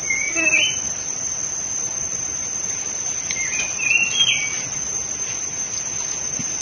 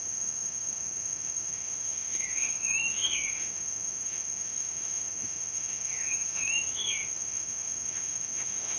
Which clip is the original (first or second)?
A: first